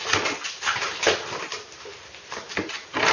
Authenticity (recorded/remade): recorded